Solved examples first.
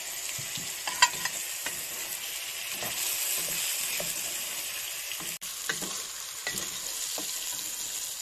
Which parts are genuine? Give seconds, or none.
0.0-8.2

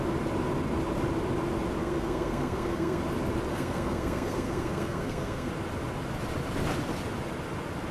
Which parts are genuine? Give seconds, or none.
0.0-1.8; 3.0-3.5; 5.5-7.9